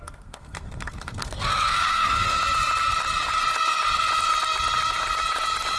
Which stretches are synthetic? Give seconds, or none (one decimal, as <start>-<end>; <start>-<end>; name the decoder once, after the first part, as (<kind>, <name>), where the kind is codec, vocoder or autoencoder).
0.0-2.4 (codec, SNAC)